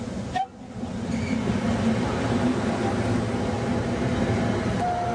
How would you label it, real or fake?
real